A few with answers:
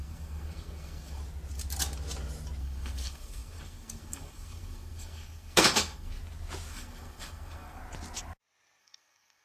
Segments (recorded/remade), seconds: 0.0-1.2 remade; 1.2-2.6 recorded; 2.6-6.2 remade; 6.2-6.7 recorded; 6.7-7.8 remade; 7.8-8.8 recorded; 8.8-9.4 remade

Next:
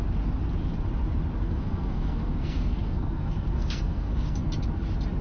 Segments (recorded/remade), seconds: 0.0-1.4 recorded; 1.4-4.5 remade; 4.5-5.2 recorded